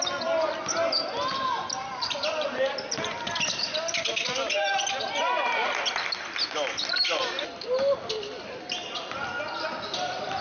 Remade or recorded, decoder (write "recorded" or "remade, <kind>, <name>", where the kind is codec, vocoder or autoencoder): recorded